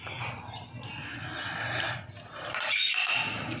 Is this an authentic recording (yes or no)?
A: yes